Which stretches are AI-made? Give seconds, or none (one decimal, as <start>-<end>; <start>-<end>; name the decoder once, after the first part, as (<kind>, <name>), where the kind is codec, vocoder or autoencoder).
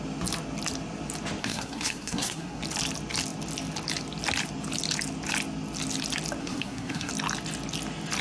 1.4-2.6 (codec, SNAC); 6.4-7.1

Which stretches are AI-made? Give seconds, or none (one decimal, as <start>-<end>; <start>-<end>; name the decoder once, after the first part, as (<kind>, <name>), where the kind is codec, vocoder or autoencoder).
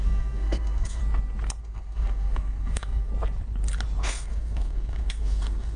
0.0-1.0 (codec, SNAC); 1.6-3.1; 4.0-5.8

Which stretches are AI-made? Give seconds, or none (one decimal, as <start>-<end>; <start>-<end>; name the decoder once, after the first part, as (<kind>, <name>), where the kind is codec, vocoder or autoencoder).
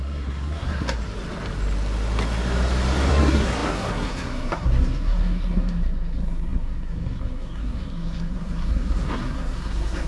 0.0-1.0 (codec, SNAC); 3.1-10.1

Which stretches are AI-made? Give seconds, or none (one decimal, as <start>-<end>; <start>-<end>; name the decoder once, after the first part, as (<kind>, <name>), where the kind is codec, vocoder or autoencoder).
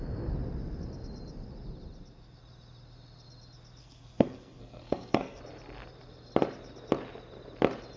3.8-5.4 (codec, SNAC)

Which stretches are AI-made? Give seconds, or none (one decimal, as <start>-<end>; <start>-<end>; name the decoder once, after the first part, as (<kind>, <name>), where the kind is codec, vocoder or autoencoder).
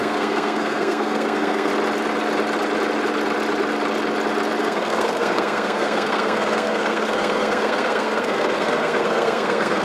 0.0-1.7 (codec, SNAC); 4.6-9.8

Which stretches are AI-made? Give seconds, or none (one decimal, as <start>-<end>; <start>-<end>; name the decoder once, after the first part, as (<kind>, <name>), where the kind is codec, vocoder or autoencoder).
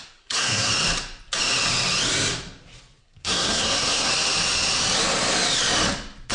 0.0-0.7 (codec, SNAC); 3.0-4.1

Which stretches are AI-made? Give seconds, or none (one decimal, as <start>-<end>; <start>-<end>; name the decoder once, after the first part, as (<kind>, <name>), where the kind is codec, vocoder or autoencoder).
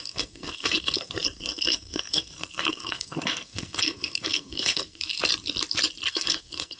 0.0-5.1 (codec, SNAC); 6.1-6.8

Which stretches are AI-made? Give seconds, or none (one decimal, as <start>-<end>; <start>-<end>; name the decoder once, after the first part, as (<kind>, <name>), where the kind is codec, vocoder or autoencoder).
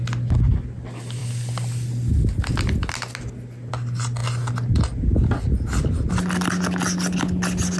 none